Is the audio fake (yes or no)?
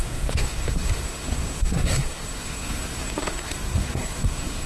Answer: yes